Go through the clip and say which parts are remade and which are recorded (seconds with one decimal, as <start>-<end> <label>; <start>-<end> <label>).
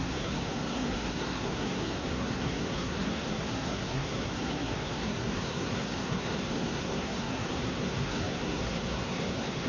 0.0-9.7 remade